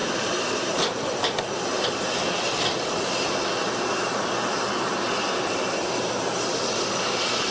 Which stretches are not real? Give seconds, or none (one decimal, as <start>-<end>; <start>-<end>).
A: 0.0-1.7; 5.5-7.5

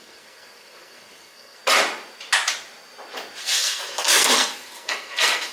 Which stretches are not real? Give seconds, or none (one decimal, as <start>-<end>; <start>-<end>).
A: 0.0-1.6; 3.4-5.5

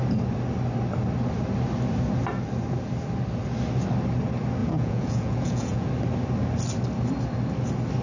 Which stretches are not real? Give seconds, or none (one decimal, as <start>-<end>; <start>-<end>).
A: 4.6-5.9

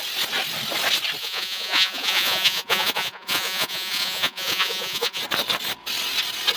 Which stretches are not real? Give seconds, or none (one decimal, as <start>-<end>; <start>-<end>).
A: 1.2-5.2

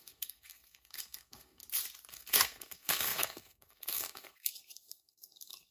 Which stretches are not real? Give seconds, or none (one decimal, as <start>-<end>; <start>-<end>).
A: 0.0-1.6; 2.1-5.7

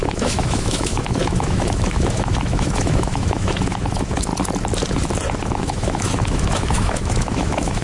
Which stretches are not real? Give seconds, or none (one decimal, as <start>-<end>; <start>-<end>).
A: 0.0-4.3; 5.4-7.8

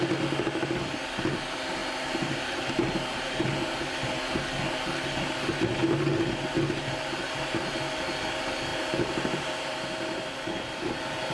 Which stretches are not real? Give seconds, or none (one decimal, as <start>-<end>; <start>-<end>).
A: 1.8-3.8; 8.7-10.5

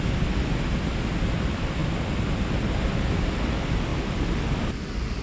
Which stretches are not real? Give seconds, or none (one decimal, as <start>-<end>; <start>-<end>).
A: none